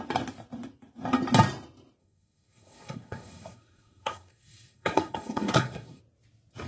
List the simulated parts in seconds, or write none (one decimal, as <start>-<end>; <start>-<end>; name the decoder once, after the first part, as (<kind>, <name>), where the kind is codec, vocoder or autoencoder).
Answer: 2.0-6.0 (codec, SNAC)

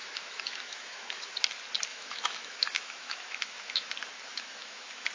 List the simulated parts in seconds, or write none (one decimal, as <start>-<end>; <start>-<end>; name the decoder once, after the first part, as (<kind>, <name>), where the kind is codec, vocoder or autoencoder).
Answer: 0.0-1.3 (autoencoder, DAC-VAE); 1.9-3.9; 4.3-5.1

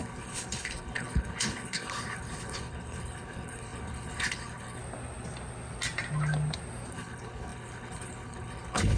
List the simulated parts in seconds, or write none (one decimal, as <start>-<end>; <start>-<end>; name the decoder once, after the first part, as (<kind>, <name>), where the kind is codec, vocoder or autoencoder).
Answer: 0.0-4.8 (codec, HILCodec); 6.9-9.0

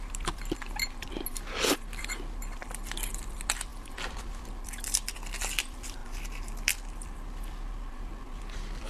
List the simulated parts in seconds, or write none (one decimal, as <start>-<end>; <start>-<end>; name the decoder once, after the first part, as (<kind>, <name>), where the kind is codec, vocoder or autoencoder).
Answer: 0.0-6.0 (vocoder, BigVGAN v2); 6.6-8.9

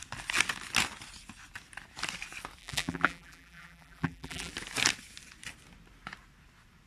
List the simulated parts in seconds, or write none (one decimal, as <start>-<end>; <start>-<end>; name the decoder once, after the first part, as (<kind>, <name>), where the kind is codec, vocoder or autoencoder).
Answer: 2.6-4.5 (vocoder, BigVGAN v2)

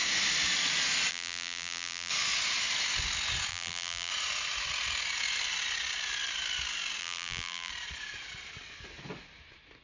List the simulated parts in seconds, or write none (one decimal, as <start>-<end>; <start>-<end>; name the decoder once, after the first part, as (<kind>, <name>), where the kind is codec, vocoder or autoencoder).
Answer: 1.1-2.1 (vocoder, BigVGAN v2); 3.5-4.1; 7.0-7.7

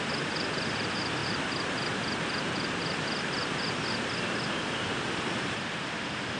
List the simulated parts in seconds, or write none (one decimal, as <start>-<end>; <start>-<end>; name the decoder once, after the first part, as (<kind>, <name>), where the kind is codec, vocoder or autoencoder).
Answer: none